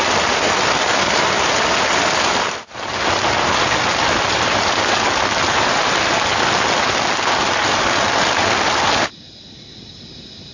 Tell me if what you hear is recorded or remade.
recorded